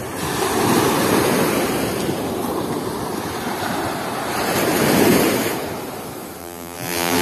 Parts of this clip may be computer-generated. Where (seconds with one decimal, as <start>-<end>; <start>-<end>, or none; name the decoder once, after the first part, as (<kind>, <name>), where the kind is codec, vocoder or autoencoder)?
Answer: 6.4-7.2 (vocoder, BigVGAN v2)